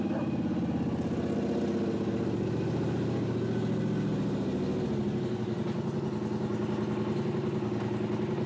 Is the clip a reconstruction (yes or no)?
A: no